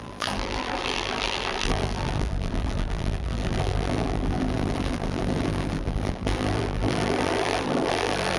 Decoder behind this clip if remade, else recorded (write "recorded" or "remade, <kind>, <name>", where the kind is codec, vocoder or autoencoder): remade, vocoder, BigVGAN v2